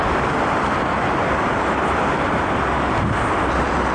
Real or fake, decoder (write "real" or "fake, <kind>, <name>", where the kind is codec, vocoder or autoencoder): real